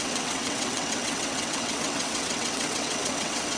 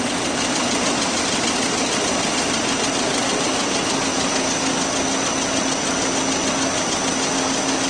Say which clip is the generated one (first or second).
first